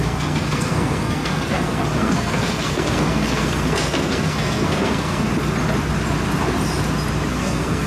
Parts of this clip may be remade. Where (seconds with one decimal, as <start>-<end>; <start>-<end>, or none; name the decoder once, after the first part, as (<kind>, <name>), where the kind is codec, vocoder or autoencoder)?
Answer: 0.0-5.3 (codec, SNAC); 7.3-7.9